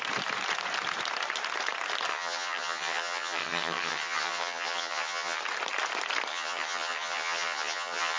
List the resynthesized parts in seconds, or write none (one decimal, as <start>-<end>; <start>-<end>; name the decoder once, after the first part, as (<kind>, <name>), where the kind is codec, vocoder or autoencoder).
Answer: 2.1-5.4 (vocoder, HiFi-GAN); 6.3-8.2